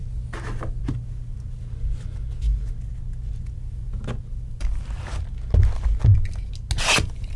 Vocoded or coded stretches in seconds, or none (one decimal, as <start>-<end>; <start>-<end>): none